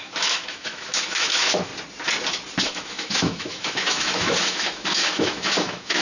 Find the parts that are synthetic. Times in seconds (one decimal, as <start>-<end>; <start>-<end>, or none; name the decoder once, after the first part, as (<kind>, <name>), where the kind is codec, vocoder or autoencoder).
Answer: 0.0-1.7 (autoencoder, DAC-VAE); 2.6-6.0